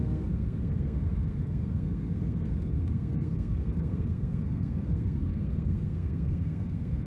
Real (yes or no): no